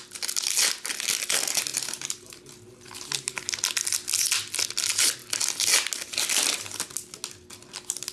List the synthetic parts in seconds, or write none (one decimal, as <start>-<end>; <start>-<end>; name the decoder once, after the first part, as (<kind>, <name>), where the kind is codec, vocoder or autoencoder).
1.7-2.4 (vocoder, BigVGAN v2)